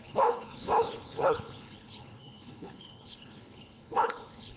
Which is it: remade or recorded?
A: remade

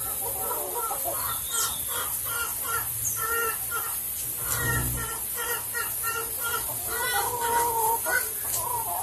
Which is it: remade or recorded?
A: recorded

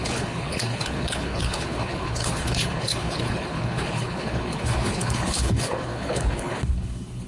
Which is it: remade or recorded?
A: remade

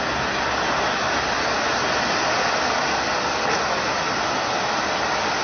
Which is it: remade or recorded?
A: recorded